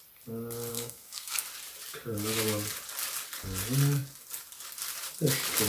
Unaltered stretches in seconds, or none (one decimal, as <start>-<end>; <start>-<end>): 0.0-0.7; 1.4-5.7